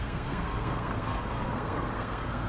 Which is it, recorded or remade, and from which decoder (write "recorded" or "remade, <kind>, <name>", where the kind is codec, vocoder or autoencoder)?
remade, codec, SNAC